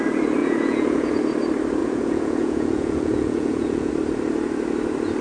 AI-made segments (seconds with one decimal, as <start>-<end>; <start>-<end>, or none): 0.4-1.1; 1.8-3.9

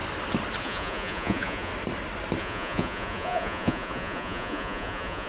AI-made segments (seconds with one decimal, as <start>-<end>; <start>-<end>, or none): 0.6-1.7; 2.4-5.3

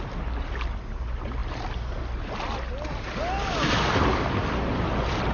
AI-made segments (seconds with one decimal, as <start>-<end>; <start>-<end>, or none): none

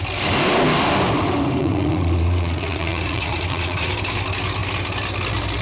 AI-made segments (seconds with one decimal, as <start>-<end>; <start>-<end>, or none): 1.6-3.9